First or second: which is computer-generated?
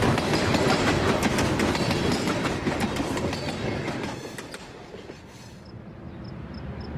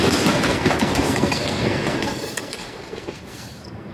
second